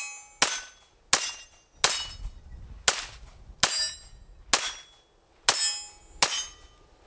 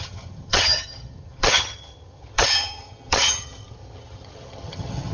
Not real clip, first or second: second